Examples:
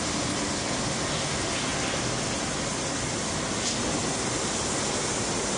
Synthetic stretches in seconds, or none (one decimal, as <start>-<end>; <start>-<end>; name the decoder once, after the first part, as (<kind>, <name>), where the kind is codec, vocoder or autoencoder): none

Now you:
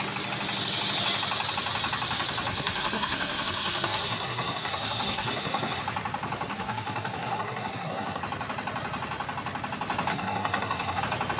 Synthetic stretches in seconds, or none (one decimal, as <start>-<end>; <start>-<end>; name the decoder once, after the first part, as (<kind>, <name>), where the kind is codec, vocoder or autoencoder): 2.5-5.8 (codec, SNAC); 6.5-8.2; 10.1-11.0

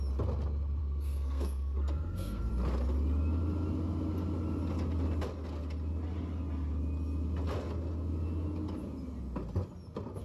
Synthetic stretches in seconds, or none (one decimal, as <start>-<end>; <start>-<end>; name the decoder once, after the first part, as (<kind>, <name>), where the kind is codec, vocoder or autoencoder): 0.8-2.5 (codec, SNAC)

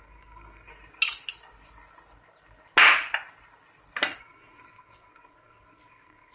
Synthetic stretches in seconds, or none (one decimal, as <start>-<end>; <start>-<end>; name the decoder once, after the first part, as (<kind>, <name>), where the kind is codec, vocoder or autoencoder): 0.0-0.7 (codec, SNAC); 4.2-6.3

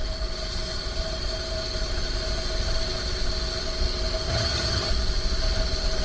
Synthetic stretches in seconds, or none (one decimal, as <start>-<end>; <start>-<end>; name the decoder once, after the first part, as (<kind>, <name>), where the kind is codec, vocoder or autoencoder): 4.3-4.9 (vocoder, HiFi-GAN)

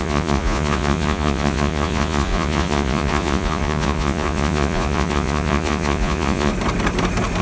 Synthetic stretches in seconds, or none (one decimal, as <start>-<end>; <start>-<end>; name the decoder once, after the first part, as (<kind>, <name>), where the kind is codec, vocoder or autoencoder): 0.0-6.5 (vocoder, Vocos)